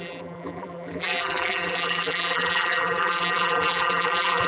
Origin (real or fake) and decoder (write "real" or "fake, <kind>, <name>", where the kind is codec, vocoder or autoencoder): fake, vocoder, BigVGAN v2